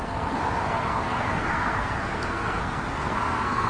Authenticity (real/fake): fake